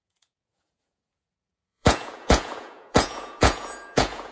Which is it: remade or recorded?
remade